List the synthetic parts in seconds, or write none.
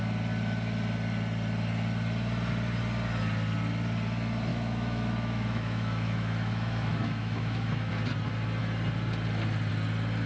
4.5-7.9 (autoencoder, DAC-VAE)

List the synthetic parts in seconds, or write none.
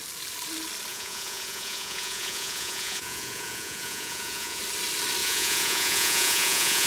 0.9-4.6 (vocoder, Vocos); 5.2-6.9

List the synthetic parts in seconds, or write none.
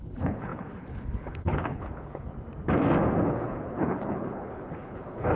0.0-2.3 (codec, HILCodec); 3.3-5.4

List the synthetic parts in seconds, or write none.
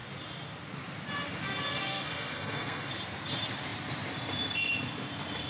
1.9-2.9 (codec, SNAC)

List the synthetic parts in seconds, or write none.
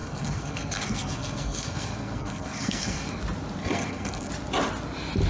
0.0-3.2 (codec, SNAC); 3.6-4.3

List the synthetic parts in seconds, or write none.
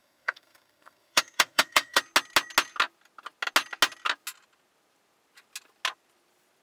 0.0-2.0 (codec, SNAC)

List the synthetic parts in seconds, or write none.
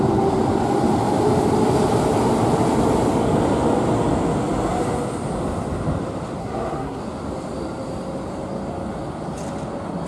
6.4-7.0 (codec, SNAC)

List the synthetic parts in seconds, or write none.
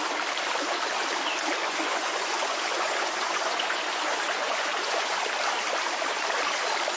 1.6-5.2 (vocoder, Vocos)